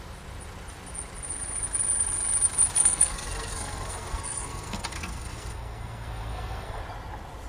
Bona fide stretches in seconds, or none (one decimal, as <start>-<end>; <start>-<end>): 0.0-2.8; 6.8-7.5